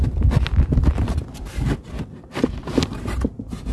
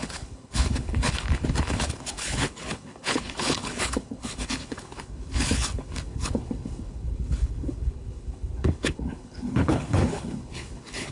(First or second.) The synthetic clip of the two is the second